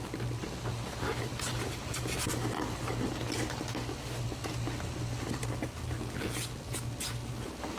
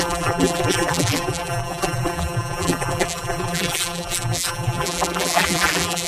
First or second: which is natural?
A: first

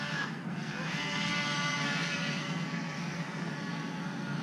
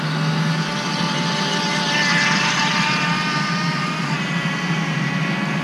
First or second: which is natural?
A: second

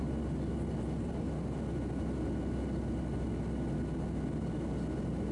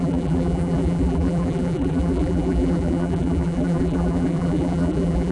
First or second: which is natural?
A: first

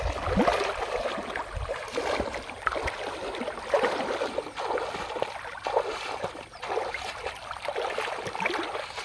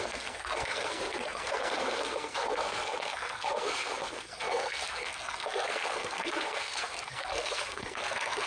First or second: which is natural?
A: first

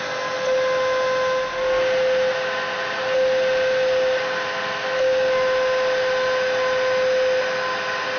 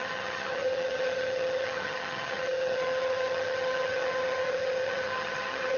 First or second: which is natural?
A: first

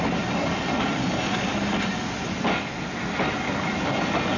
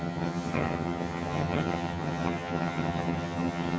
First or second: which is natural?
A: first